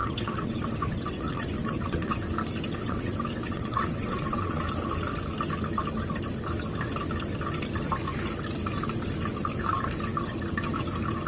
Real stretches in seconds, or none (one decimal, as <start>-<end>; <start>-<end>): 2.2-2.8; 4.6-11.3